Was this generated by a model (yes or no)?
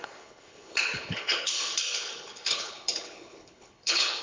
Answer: yes